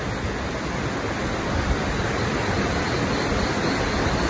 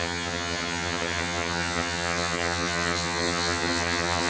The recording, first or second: first